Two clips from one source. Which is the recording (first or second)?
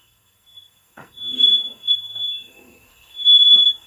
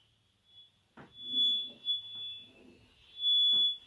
second